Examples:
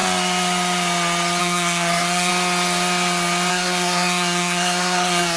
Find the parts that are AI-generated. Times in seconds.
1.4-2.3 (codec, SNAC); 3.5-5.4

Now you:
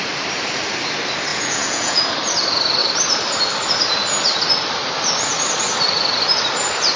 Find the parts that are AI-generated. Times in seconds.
1.3-2.0 (vocoder, Vocos)